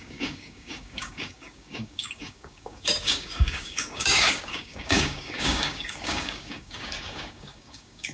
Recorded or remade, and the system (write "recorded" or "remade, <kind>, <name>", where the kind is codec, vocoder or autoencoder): remade, codec, DAC